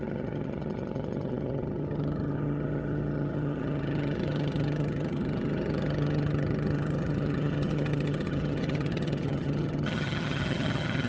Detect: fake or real fake